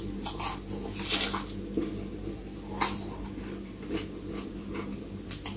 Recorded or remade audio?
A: recorded